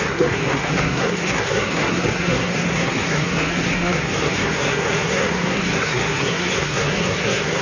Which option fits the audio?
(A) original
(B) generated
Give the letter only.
B